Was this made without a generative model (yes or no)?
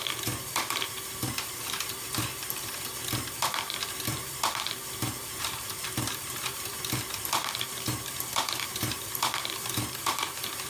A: no